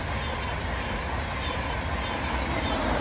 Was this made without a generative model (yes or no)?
yes